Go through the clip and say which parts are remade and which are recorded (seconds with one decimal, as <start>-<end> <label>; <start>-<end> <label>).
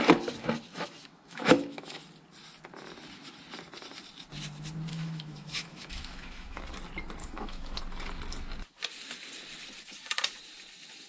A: 0.0-0.7 recorded; 0.7-2.0 remade; 2.0-4.9 recorded; 4.9-6.6 remade; 6.6-7.2 recorded; 7.2-7.8 remade; 7.8-11.1 recorded